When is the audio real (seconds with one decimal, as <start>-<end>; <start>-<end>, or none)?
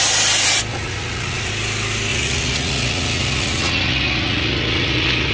0.0-0.7; 1.5-2.1